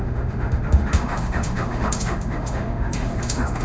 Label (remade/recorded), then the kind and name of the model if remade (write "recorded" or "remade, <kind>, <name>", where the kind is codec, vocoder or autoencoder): remade, autoencoder, DAC-VAE